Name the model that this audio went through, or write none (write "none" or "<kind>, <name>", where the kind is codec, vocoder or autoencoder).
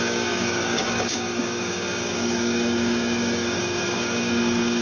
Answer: codec, DAC